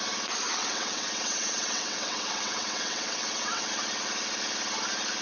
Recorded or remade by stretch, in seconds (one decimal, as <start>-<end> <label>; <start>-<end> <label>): 0.0-0.6 recorded; 0.6-3.7 remade; 3.7-5.2 recorded